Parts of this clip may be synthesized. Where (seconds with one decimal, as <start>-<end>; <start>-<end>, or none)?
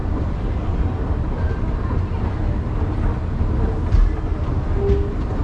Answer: none